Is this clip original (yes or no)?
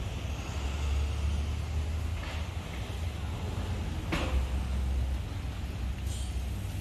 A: yes